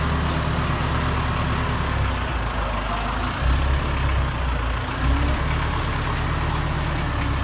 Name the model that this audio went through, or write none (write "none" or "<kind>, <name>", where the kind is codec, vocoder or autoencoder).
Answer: none